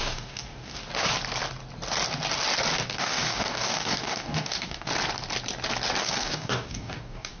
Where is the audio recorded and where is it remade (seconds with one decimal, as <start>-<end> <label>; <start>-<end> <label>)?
0.0-0.8 remade; 0.8-2.9 recorded; 2.9-4.9 remade; 4.9-6.0 recorded; 6.0-7.4 remade

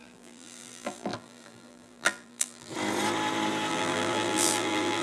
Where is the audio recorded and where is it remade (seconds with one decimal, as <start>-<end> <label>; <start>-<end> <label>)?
0.0-2.7 remade; 2.7-3.7 recorded; 3.7-5.0 remade

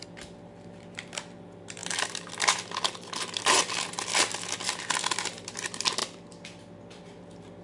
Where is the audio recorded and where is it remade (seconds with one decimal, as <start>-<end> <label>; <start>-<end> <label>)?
0.0-7.6 recorded

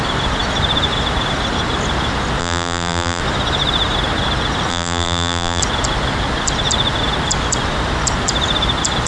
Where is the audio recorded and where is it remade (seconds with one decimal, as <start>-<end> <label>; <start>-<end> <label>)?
0.0-2.4 recorded; 2.4-3.2 remade; 3.2-4.7 recorded; 4.7-5.6 remade; 5.6-9.1 recorded

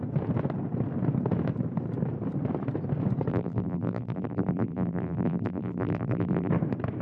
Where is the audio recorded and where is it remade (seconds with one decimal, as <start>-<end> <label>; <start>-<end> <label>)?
0.0-3.3 recorded; 3.3-6.5 remade; 6.5-7.0 recorded